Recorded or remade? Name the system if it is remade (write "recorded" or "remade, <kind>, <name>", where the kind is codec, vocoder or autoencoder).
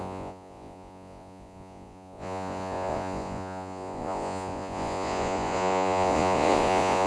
remade, vocoder, Vocos